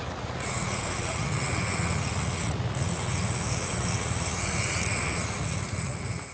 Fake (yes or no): yes